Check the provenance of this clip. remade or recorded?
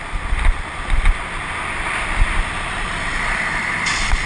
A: recorded